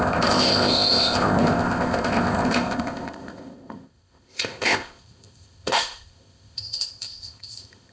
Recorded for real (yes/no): no